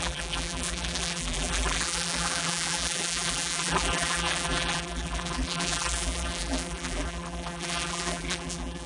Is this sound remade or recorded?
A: remade